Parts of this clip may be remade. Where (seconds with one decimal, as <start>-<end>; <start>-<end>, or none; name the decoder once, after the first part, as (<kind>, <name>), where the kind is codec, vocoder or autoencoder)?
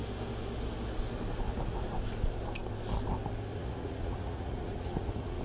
3.5-5.4 (vocoder, Vocos)